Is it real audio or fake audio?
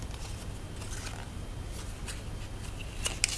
real